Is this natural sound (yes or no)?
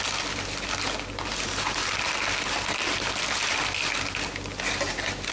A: yes